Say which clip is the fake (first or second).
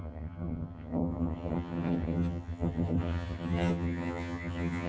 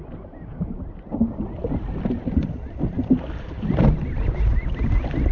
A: first